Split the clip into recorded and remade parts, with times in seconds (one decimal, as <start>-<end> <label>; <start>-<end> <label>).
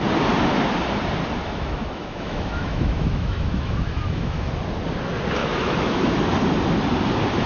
0.0-1.4 recorded; 1.4-4.5 remade; 4.5-5.4 recorded; 5.4-6.1 remade; 6.1-7.5 recorded